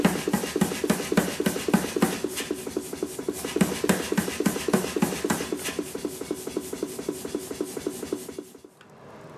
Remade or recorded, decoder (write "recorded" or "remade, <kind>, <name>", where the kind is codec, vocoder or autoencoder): recorded